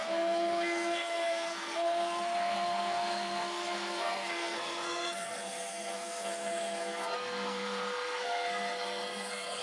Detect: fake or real fake